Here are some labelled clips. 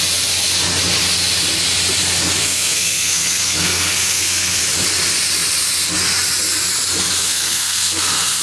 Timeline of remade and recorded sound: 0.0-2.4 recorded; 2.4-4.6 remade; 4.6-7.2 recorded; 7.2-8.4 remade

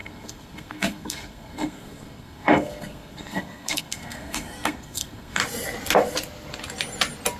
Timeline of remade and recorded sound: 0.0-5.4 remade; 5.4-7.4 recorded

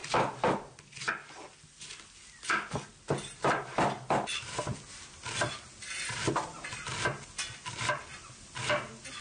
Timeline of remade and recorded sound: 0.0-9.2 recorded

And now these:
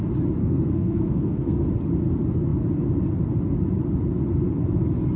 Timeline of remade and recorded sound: 0.0-0.4 recorded; 0.4-1.7 remade; 1.7-5.2 recorded

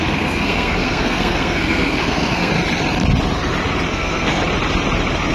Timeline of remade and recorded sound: 0.0-2.5 remade; 2.5-3.9 recorded; 3.9-4.4 remade; 4.4-5.3 recorded

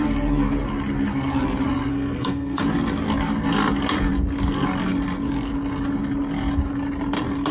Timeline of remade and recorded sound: 0.0-1.9 recorded; 1.9-2.6 remade; 2.6-7.5 recorded